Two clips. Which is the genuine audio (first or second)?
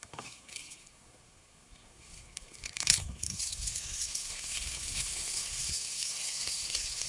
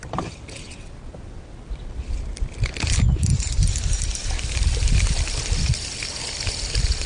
second